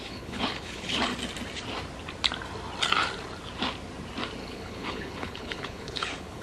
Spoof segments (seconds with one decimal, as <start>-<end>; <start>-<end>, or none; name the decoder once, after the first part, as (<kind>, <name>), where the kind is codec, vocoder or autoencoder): 0.0-1.1 (codec, HILCodec); 4.4-6.4